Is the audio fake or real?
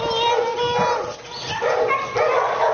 real